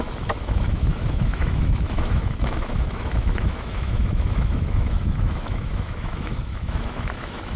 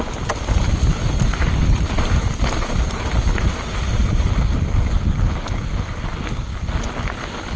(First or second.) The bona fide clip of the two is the second